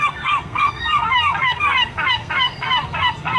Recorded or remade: remade